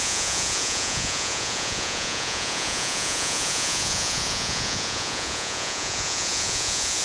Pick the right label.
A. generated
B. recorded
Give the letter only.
A